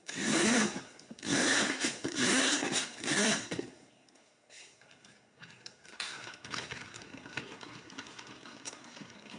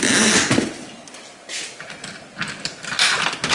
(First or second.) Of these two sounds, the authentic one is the second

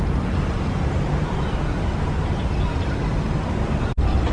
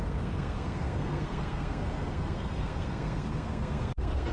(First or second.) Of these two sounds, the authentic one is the first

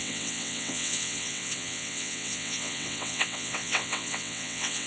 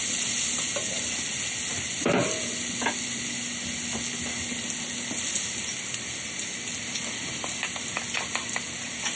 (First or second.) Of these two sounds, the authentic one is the second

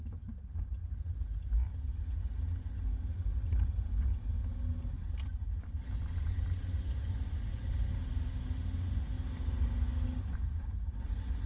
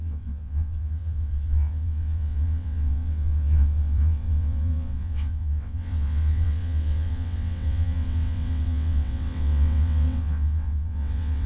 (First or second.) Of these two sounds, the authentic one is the first